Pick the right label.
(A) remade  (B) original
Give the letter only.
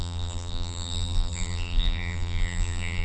A